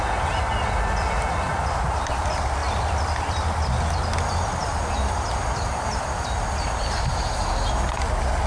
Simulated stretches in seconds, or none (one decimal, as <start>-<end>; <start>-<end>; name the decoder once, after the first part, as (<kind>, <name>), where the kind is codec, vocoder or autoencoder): none